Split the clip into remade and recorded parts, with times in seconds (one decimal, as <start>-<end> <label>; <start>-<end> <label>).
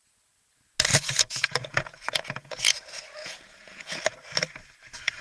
0.0-0.9 recorded; 0.9-2.7 remade; 2.7-3.2 recorded; 3.2-4.0 remade; 4.0-5.2 recorded